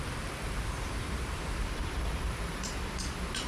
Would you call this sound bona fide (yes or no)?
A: no